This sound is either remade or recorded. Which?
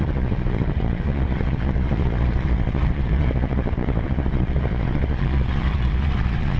remade